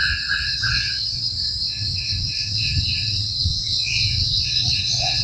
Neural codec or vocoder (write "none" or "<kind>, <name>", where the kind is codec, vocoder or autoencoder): vocoder, WaveNeXt